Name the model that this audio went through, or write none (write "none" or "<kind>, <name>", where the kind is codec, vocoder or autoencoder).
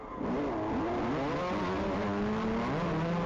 none